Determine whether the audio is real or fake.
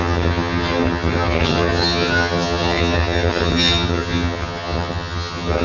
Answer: fake